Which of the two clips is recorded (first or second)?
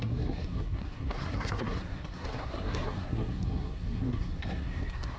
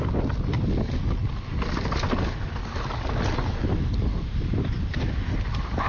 second